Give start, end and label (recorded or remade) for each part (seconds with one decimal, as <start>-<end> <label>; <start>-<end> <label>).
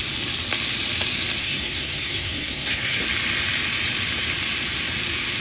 0.0-1.4 recorded; 1.4-3.0 remade; 3.0-5.4 recorded